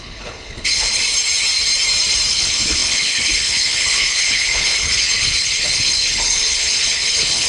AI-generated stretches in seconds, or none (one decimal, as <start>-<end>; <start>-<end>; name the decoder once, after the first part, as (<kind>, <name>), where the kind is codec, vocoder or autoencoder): 0.0-1.0 (codec, HILCodec); 2.3-7.5